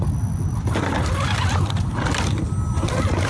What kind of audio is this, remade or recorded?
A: recorded